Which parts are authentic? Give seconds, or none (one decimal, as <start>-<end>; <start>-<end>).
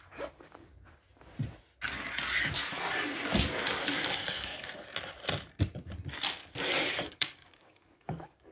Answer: 0.7-3.5; 4.5-6.8